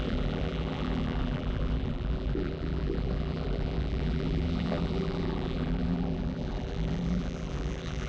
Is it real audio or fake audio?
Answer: fake